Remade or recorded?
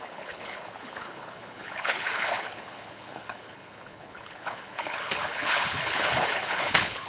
remade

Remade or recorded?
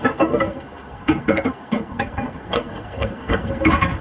remade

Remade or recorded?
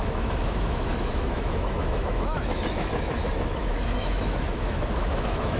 remade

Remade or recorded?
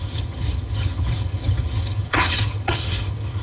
remade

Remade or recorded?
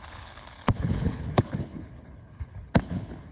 remade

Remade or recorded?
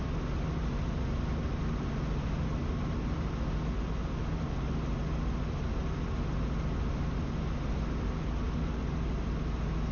recorded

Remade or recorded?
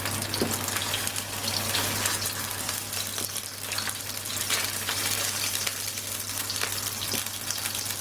recorded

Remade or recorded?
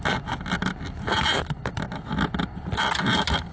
recorded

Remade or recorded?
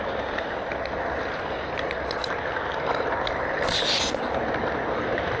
recorded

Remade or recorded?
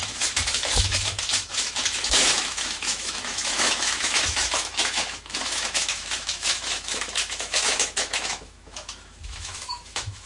remade